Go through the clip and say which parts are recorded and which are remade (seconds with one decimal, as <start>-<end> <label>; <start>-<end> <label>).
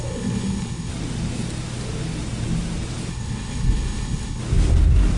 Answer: 0.0-0.9 remade; 0.9-3.1 recorded; 3.1-4.4 remade; 4.4-5.2 recorded